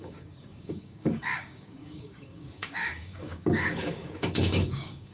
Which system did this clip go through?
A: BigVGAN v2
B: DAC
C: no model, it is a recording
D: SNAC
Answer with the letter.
B